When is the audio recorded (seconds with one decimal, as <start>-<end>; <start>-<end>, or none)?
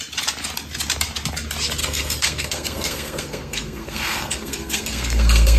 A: 0.0-1.8